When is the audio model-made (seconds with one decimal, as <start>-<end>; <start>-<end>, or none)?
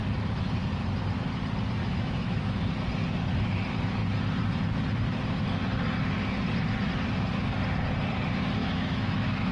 1.8-2.6; 8.6-9.5